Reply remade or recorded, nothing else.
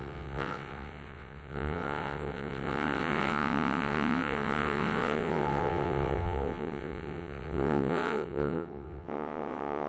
remade